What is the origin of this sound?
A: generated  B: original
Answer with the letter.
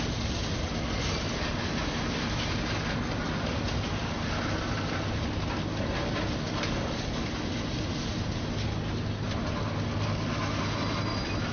B